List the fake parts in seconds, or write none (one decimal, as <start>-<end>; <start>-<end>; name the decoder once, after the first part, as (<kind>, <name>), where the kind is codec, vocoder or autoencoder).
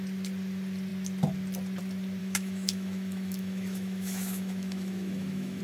2.2-5.6 (autoencoder, DAC-VAE)